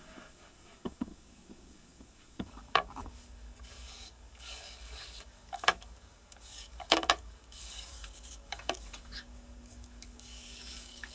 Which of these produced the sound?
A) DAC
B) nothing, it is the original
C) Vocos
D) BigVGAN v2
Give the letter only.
A